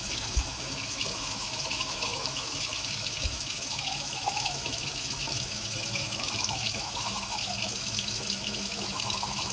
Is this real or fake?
fake